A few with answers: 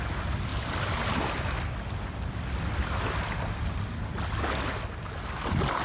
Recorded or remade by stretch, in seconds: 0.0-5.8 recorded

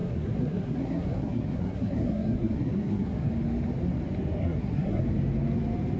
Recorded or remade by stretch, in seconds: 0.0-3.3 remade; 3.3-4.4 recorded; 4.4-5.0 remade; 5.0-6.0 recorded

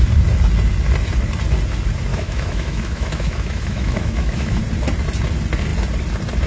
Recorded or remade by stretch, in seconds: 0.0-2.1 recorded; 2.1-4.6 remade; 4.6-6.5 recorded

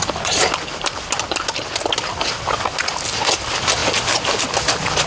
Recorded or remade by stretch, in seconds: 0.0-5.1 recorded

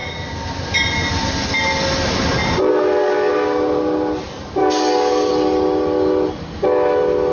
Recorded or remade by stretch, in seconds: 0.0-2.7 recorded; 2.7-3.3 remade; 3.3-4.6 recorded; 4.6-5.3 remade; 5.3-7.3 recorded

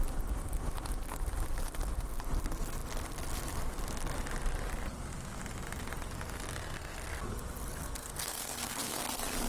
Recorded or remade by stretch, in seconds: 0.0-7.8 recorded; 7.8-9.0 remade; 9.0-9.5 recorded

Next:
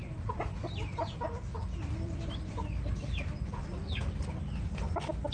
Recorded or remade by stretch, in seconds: 0.0-5.3 recorded

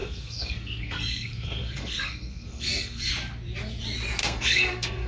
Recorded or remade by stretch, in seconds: 0.0-3.1 remade; 3.1-4.2 recorded; 4.2-5.1 remade